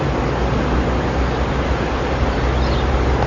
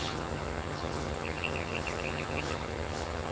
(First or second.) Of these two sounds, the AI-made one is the second